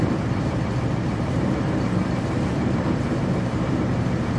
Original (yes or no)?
no